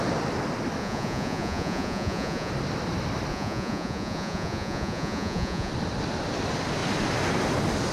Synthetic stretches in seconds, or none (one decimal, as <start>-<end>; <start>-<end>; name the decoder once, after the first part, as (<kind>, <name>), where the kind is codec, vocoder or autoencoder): 0.8-2.5 (vocoder, Vocos); 3.3-5.7

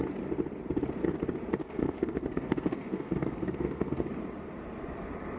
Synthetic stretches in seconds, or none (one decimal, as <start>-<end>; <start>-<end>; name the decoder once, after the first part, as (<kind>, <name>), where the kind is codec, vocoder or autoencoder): 1.6-4.1 (codec, SNAC)

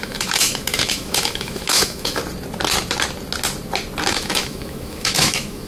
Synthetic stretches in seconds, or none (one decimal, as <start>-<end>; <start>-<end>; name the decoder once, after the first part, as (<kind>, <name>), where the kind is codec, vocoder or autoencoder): 0.0-2.2 (autoencoder, DAC-VAE); 4.1-5.7

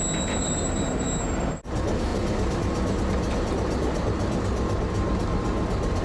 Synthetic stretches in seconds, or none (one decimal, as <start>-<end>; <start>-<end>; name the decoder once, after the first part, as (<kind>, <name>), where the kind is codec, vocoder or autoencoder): none